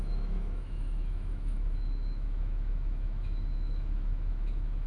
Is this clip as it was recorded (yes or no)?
no